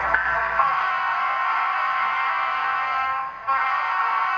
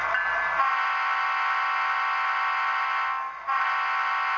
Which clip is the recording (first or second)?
second